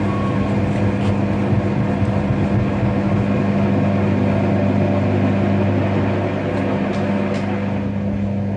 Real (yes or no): yes